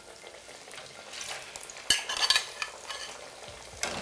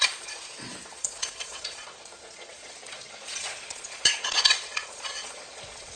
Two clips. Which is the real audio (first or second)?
first